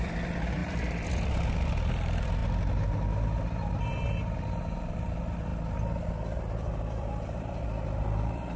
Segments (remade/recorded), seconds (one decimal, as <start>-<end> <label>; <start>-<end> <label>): 0.0-2.4 remade; 2.4-3.7 recorded; 3.7-5.5 remade; 5.5-6.1 recorded; 6.1-8.6 remade